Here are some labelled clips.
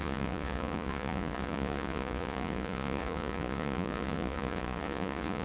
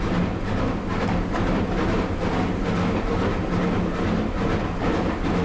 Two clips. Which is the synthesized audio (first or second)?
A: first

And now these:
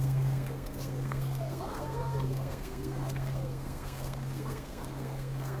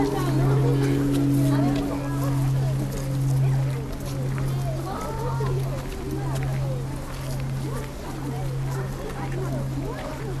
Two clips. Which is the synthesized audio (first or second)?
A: first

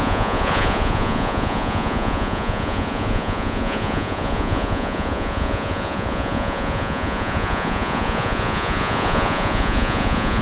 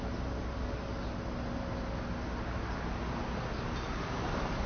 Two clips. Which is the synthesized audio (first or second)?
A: first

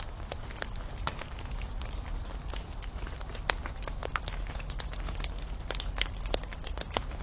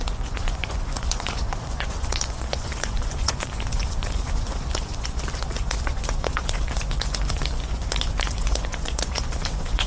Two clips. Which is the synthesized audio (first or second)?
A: second